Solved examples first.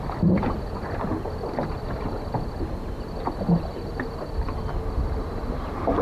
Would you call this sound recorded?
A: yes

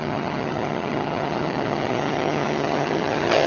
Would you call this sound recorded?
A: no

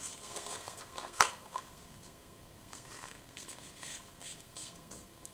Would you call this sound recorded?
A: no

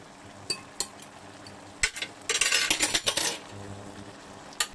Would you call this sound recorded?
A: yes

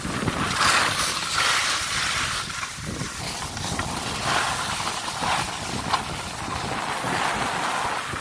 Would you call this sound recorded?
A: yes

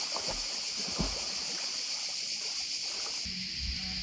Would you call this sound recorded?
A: yes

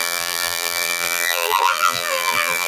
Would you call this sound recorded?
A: no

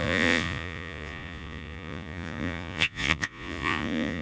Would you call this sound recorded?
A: no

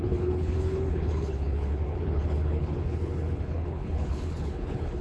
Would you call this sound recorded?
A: no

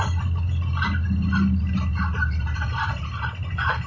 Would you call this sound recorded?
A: yes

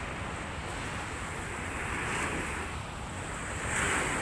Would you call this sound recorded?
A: yes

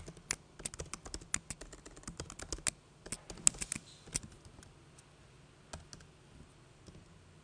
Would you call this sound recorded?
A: yes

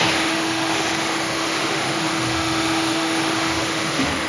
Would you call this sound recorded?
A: no